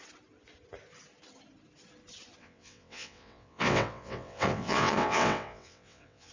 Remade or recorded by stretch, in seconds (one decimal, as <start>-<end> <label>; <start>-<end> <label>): 0.0-2.4 recorded; 2.4-6.3 remade